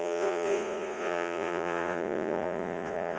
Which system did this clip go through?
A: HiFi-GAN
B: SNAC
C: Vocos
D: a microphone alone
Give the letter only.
C